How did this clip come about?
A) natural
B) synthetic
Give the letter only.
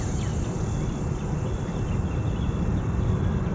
A